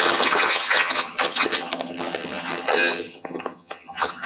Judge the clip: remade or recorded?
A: remade